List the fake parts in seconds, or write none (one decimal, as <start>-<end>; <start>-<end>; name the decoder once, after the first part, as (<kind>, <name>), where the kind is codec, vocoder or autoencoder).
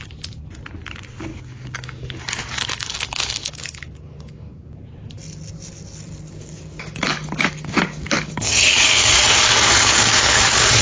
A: 1.3-4.7 (codec, DAC); 6.4-10.8